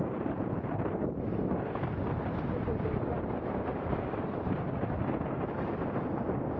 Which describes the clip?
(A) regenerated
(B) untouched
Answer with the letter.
B